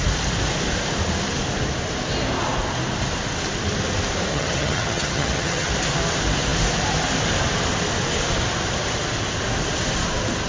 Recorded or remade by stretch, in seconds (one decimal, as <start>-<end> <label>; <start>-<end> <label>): 0.0-4.3 recorded; 4.3-5.7 remade; 5.7-10.5 recorded